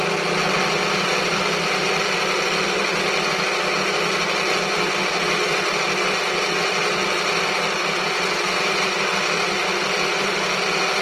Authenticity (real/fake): real